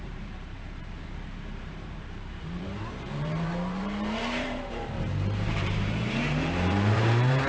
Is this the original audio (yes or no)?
no